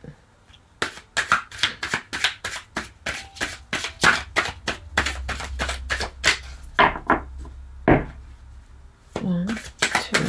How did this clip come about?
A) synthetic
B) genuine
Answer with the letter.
B